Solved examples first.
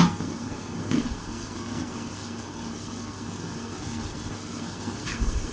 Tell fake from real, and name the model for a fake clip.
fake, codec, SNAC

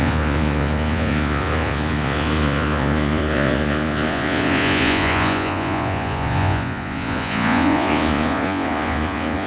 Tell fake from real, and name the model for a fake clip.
fake, vocoder, Vocos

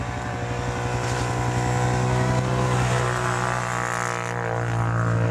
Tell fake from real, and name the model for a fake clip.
real